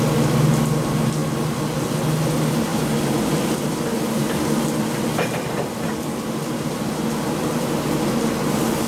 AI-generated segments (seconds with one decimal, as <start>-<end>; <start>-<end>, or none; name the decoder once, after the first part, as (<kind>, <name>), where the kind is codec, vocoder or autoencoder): 2.7-7.9 (vocoder, BigVGAN v2)